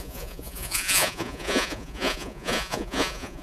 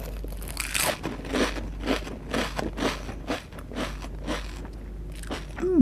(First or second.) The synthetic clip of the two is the first